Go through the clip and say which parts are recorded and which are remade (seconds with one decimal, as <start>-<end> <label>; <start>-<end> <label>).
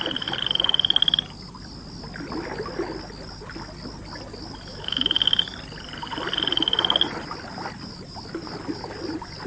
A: 0.0-4.7 recorded; 4.7-5.4 remade; 5.4-9.5 recorded